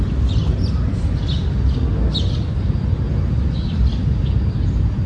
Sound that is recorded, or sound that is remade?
recorded